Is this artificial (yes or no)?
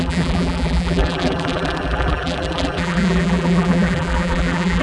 yes